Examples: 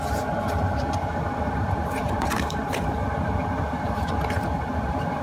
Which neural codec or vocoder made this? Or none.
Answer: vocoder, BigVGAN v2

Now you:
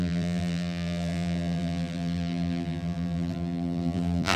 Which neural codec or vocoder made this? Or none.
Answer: vocoder, BigVGAN v2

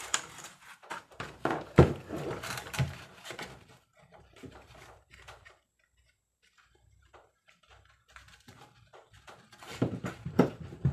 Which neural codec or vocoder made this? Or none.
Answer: vocoder, BigVGAN v2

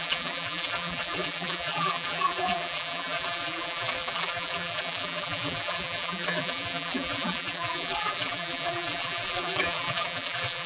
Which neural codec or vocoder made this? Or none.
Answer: vocoder, BigVGAN v2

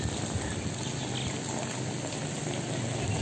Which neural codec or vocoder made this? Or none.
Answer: none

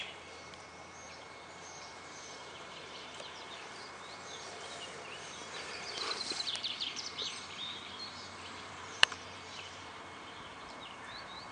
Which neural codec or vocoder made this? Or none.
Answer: vocoder, BigVGAN v2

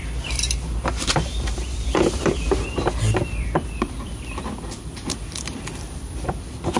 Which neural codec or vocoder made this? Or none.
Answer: vocoder, BigVGAN v2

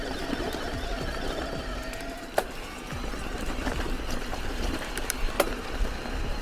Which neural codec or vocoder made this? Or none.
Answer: vocoder, BigVGAN v2